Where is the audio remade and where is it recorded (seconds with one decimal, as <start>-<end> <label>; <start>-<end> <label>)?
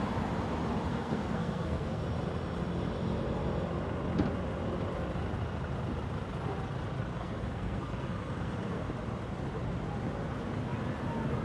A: 0.0-0.9 recorded; 0.9-2.0 remade; 2.0-7.1 recorded; 7.1-8.9 remade; 8.9-11.4 recorded